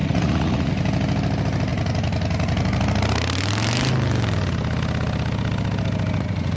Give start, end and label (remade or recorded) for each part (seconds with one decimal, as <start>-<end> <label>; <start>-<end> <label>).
0.0-0.7 remade; 0.7-6.6 recorded